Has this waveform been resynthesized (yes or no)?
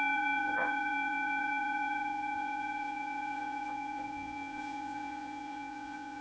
yes